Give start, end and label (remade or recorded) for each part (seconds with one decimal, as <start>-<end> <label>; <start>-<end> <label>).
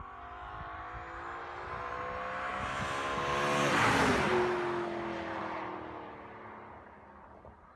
0.0-7.8 recorded